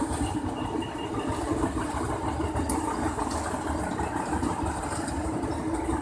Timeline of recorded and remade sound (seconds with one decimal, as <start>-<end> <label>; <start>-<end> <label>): 0.0-6.0 recorded